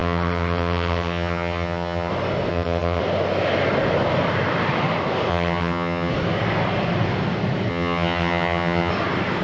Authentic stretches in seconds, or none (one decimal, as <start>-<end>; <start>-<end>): 2.1-2.5; 3.0-5.3; 6.1-7.7; 8.9-9.4